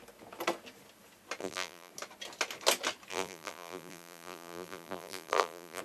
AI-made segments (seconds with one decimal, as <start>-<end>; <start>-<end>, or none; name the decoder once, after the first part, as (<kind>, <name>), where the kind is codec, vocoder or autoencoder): 1.4-1.9 (vocoder, BigVGAN v2); 3.1-5.8